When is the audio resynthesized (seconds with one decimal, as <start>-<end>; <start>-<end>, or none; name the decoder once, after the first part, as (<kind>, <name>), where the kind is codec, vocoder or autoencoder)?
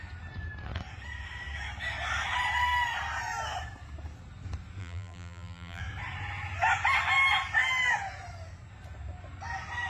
4.8-5.8 (vocoder, BigVGAN v2)